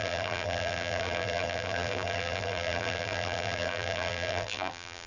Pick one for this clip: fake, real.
fake